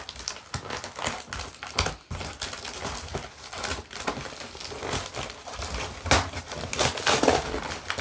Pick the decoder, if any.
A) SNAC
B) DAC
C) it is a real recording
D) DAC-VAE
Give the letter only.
C